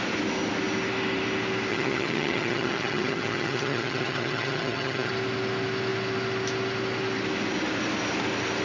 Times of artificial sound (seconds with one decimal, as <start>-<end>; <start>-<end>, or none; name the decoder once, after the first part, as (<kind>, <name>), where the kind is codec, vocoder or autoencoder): 1.7-5.1 (vocoder, HiFi-GAN)